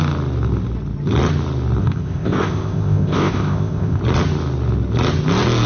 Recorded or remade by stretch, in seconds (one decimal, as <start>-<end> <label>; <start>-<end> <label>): 0.0-1.8 recorded; 1.8-4.0 remade; 4.0-5.7 recorded